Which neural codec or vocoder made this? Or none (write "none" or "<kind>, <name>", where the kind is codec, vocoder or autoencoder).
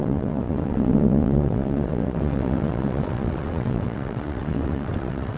vocoder, WaveNeXt